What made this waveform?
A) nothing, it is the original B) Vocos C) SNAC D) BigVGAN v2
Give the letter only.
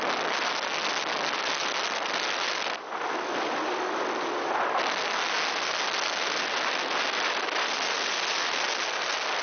A